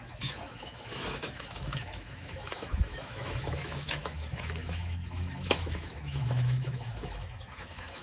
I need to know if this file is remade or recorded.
remade